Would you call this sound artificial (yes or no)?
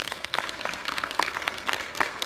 yes